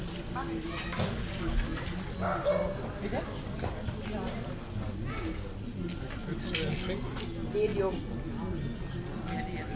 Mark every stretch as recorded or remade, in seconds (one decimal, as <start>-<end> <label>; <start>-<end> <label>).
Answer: 0.0-9.8 recorded

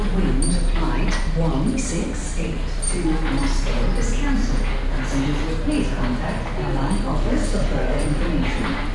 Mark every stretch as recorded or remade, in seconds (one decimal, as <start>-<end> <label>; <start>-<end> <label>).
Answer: 0.0-6.8 recorded; 6.8-8.2 remade; 8.2-8.9 recorded

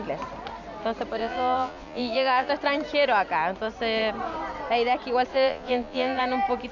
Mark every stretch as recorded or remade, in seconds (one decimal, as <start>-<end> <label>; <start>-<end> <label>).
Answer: 0.0-1.2 recorded; 1.2-2.5 remade; 2.5-5.3 recorded; 5.3-6.2 remade; 6.2-6.7 recorded

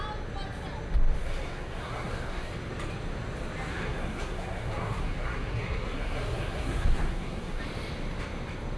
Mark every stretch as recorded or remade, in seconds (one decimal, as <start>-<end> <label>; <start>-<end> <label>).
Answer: 0.0-1.2 recorded; 1.2-2.5 remade; 2.5-3.7 recorded; 3.7-7.6 remade; 7.6-8.8 recorded